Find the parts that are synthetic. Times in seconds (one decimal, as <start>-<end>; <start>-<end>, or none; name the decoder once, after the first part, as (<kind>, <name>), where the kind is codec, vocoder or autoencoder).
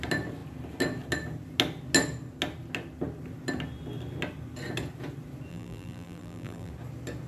5.5-6.7 (vocoder, BigVGAN v2)